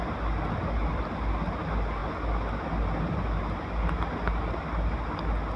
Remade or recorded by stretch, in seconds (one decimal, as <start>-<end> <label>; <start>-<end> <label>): 0.0-5.6 recorded